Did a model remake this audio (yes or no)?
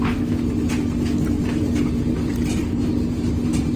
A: no